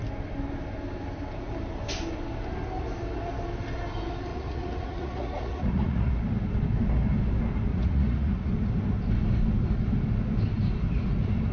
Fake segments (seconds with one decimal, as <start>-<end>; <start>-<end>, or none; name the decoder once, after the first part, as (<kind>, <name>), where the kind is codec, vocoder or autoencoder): 4.3-6.1 (vocoder, Vocos); 7.7-8.5